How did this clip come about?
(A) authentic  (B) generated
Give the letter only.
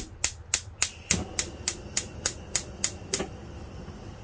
A